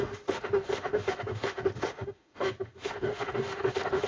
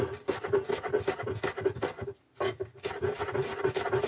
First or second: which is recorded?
second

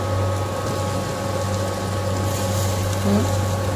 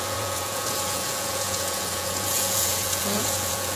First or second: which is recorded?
first